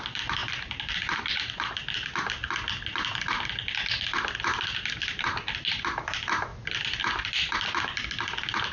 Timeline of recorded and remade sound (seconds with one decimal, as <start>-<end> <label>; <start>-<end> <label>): 0.0-0.4 recorded; 0.4-1.7 remade; 1.7-8.7 recorded